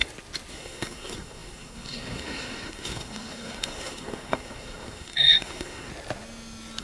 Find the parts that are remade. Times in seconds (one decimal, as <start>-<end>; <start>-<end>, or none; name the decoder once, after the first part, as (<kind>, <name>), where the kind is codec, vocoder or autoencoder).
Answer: 0.5-5.9 (codec, SNAC)